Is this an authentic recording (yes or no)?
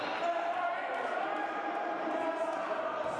yes